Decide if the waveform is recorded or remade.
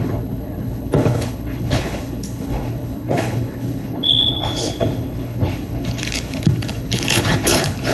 remade